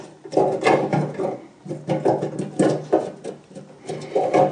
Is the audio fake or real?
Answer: real